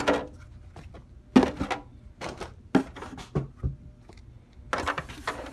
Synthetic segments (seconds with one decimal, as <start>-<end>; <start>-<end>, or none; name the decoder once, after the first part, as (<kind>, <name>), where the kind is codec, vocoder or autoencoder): none

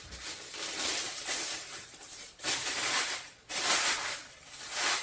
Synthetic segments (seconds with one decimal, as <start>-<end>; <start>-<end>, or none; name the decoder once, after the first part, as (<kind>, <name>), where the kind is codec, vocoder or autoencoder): 0.9-3.9 (vocoder, BigVGAN v2)

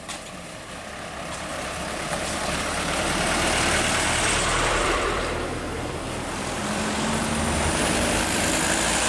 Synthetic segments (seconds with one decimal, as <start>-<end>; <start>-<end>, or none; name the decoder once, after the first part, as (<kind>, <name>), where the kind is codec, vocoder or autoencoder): 0.0-9.1 (vocoder, BigVGAN v2)

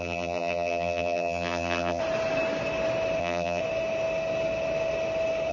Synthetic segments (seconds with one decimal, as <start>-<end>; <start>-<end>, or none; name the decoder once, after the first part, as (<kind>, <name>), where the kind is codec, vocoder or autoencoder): 0.0-2.0 (vocoder, BigVGAN v2); 3.2-3.6

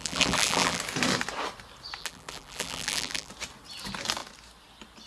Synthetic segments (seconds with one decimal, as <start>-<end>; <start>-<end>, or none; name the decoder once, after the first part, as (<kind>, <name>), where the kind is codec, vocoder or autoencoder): 0.0-0.8 (vocoder, BigVGAN v2); 2.0-3.3

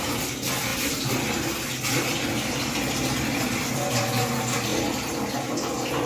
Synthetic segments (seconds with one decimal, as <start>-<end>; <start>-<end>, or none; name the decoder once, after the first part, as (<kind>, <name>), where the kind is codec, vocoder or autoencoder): none

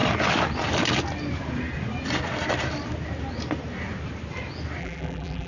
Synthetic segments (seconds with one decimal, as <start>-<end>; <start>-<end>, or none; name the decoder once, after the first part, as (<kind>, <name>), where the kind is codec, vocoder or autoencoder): 4.8-5.5 (vocoder, BigVGAN v2)